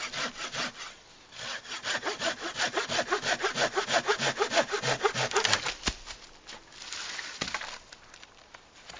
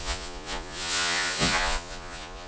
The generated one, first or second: second